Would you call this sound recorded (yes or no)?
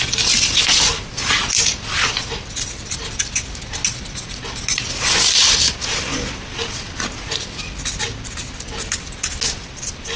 yes